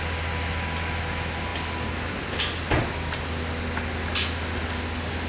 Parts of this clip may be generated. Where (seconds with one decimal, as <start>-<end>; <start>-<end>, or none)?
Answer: none